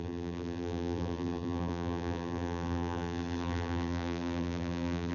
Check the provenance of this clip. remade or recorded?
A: remade